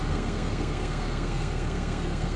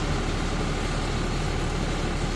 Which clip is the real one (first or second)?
second